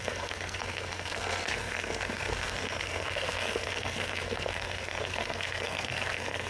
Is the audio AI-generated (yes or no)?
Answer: yes